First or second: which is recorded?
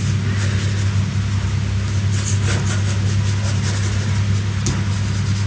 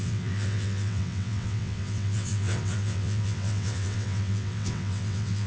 first